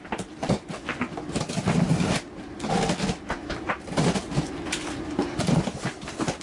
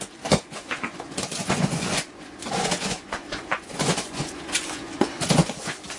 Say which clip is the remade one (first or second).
second